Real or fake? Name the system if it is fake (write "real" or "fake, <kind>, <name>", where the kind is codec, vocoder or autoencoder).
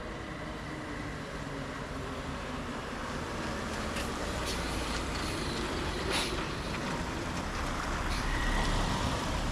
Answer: fake, vocoder, BigVGAN v2